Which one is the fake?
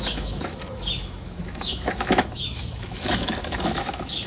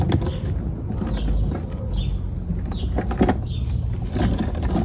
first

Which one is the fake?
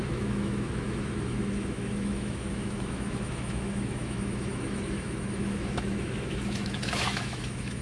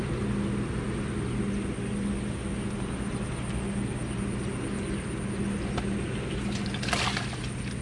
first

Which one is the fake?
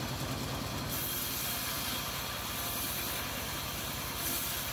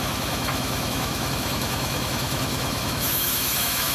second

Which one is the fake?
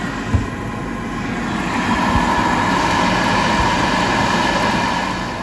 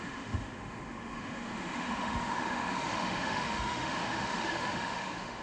second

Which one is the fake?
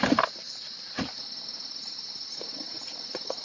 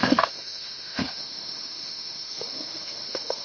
second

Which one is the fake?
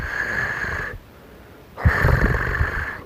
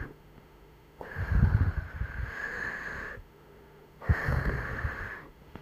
second